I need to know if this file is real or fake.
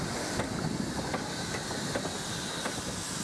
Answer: real